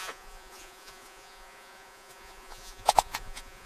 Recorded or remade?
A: remade